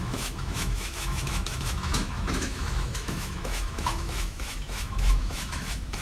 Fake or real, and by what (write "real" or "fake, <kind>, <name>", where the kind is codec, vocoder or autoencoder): fake, autoencoder, DAC-VAE